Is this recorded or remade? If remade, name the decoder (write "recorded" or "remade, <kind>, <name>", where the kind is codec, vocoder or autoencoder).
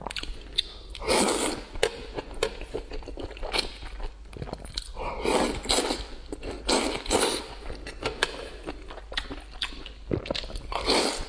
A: recorded